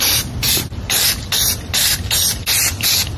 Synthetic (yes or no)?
no